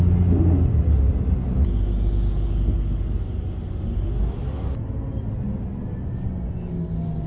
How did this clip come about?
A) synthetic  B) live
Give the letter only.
B